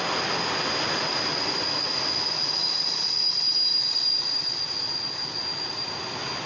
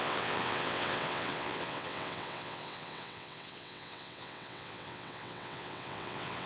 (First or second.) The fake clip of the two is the second